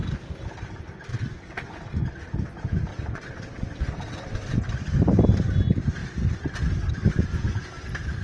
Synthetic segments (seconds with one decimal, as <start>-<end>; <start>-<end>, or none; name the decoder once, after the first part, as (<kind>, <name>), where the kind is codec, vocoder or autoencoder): 1.1-1.8 (vocoder, WaveNeXt); 2.9-4.6